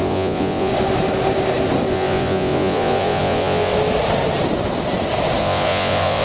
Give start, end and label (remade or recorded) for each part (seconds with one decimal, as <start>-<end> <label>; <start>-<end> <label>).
0.0-0.7 remade; 0.7-1.9 recorded; 1.9-3.7 remade; 3.7-5.4 recorded; 5.4-6.2 remade